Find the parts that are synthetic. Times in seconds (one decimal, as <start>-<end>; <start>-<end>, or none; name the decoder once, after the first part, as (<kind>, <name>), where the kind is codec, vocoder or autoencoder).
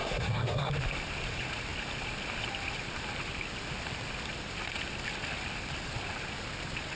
0.0-0.7 (codec, SNAC)